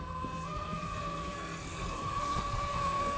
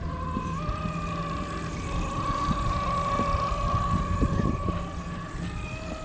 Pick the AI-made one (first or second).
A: first